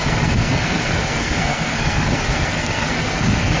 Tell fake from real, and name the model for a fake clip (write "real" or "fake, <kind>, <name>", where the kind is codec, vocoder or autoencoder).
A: fake, codec, SNAC